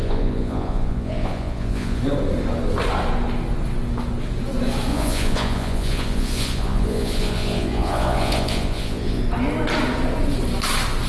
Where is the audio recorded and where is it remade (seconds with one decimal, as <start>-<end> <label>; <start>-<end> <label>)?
0.0-2.0 remade; 2.0-4.9 recorded; 4.9-9.2 remade; 9.2-11.1 recorded